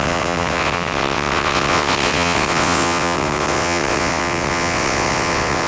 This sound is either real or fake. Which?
fake